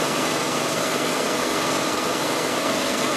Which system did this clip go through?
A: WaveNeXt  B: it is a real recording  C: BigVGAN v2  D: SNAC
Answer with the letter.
D